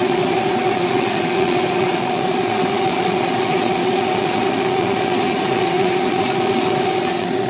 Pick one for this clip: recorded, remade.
remade